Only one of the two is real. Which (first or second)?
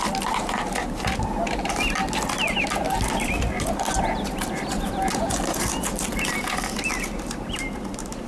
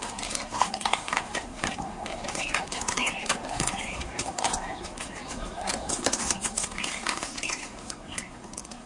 first